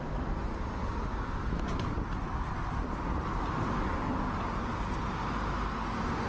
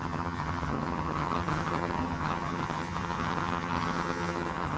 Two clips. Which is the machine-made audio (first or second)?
second